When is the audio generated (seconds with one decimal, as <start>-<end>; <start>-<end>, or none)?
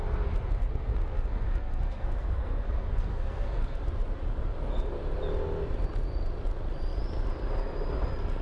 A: 0.7-3.8